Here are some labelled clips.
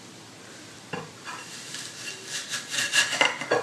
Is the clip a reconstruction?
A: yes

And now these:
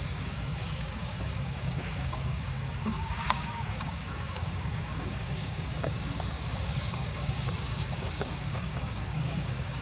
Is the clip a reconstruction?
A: yes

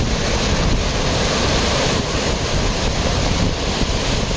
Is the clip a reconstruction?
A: yes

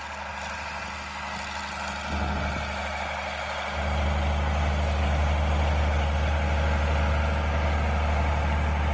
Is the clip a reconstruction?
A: no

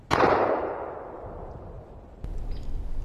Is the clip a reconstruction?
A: no